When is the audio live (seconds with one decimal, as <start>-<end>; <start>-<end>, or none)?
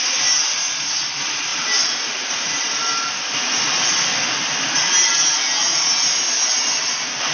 0.0-7.3